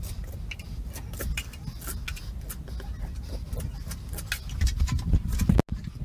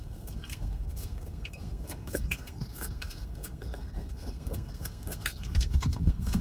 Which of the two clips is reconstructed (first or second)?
second